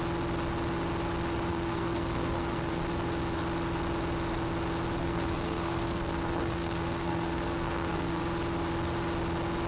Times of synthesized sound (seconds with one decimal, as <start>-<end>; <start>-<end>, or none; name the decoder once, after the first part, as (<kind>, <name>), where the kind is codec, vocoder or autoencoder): 1.5-2.8 (codec, SNAC); 5.0-8.2